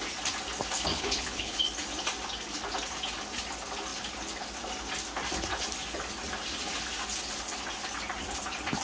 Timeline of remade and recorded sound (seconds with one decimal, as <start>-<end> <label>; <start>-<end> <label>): 0.0-0.9 recorded; 0.9-1.6 remade; 1.6-8.8 recorded